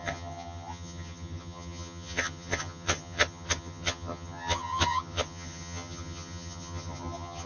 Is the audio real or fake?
fake